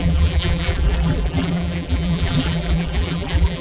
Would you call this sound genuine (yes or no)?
no